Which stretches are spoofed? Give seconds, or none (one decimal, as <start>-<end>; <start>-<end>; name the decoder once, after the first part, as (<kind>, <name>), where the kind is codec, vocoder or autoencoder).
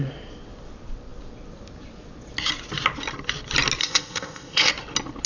3.8-4.7 (codec, ZipCodec)